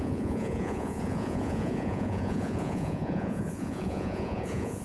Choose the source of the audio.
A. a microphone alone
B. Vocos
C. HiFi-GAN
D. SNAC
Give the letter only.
B